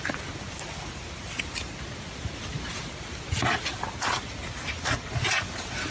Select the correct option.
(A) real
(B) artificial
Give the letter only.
A